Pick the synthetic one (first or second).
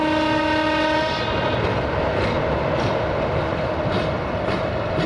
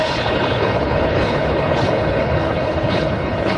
second